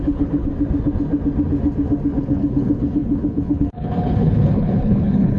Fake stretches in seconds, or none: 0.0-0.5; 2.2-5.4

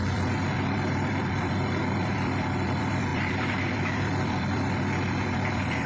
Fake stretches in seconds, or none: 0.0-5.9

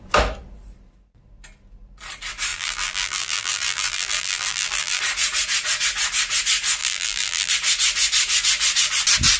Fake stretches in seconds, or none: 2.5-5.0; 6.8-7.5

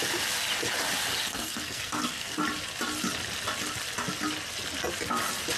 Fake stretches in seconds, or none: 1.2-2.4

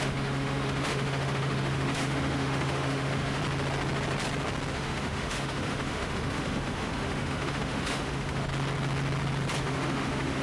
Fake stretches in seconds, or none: 0.0-3.4; 4.7-8.5; 9.6-10.4

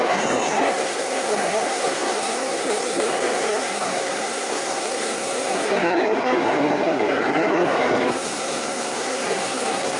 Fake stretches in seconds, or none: 0.0-10.0

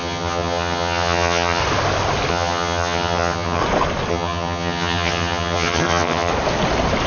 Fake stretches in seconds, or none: 0.0-1.6; 2.3-3.6; 4.1-6.3